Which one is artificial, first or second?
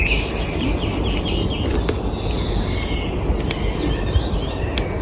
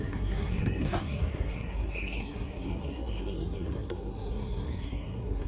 second